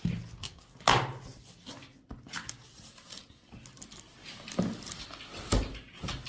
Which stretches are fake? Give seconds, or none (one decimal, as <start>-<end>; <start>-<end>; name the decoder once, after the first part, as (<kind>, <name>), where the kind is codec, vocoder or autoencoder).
none